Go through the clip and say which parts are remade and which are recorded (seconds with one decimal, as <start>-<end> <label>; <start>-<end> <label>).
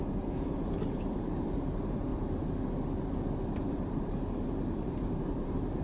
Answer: 0.0-0.5 recorded; 0.5-2.1 remade; 2.1-3.7 recorded; 3.7-5.8 remade